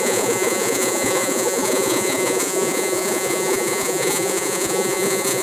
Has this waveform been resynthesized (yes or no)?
yes